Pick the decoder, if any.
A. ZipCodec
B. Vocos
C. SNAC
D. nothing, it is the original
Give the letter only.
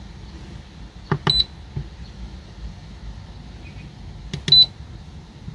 D